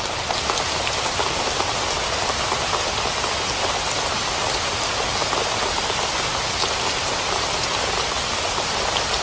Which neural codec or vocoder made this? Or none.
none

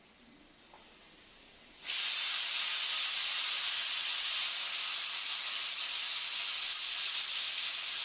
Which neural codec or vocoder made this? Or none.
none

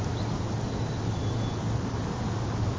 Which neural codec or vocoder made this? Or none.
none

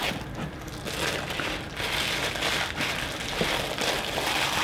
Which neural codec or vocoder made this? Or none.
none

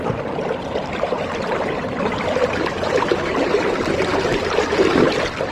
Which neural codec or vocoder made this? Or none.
none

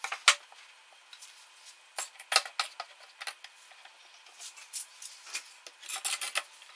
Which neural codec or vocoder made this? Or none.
none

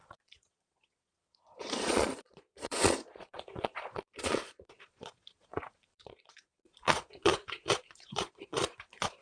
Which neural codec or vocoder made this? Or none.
vocoder, Vocos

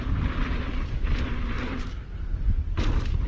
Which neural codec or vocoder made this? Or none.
none